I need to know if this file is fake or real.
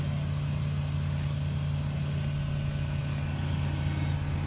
real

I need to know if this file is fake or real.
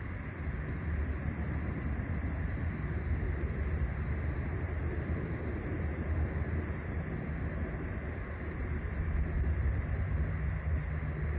real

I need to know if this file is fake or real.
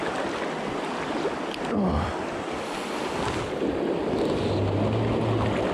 real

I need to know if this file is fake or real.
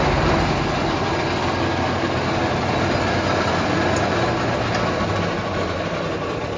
real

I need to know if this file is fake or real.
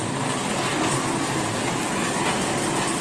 real